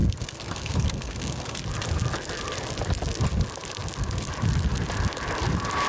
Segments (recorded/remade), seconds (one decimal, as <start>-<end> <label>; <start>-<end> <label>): 0.0-1.6 remade; 1.6-5.9 recorded